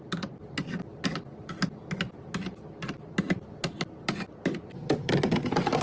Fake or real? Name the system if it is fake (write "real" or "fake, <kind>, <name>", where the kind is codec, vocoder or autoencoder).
real